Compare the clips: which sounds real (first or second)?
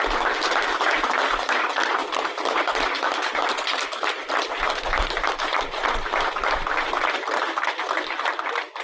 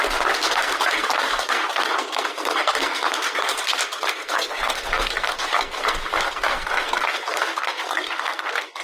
first